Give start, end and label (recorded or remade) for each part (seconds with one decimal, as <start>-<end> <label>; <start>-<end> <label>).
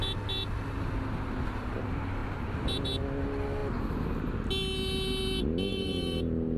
0.0-5.7 recorded; 5.7-6.6 remade